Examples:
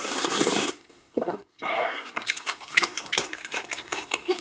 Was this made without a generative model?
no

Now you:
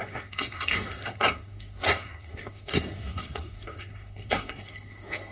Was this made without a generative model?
no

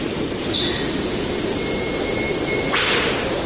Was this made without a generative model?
yes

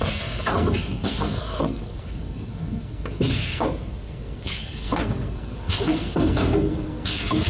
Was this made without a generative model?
no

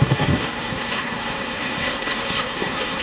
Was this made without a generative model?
no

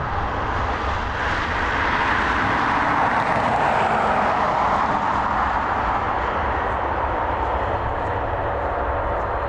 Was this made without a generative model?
yes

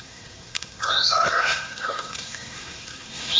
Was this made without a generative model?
no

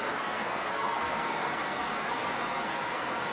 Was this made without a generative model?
no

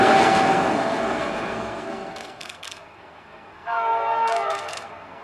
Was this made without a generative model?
no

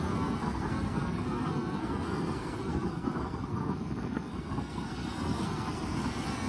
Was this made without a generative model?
no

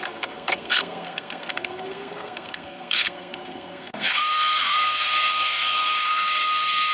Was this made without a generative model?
no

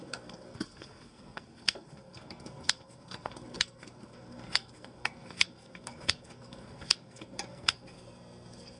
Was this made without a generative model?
no